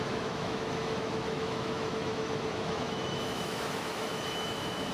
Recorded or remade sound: remade